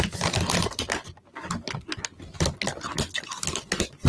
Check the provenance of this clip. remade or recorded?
recorded